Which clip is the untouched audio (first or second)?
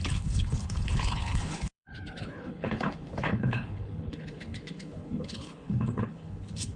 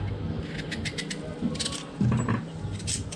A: second